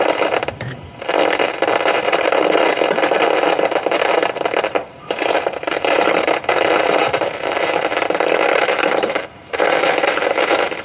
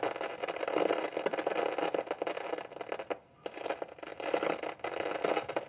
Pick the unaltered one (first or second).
second